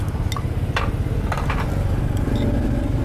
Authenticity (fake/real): real